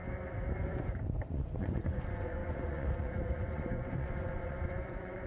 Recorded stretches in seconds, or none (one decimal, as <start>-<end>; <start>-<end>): 0.0-1.3